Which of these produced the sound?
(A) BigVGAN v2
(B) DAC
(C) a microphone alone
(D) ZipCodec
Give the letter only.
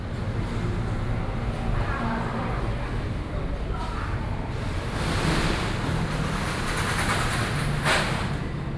C